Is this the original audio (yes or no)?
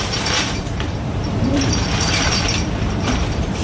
no